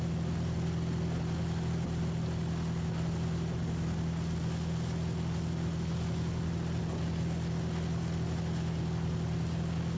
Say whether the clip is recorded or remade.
recorded